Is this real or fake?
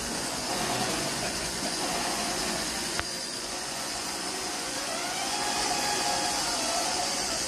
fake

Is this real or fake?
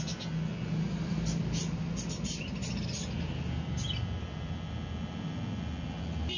real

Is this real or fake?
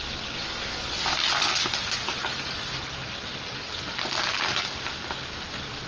real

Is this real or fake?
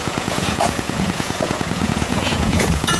fake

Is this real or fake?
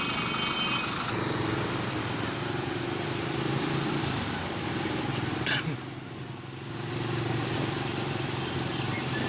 real